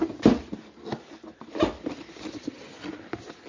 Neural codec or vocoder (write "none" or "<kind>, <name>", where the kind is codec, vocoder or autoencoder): none